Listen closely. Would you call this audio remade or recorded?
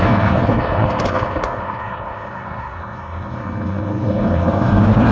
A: remade